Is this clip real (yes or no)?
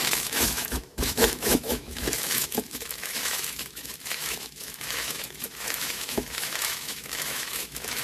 no